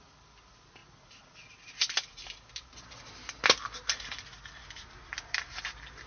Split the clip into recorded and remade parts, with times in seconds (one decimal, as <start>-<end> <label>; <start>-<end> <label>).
0.0-6.1 recorded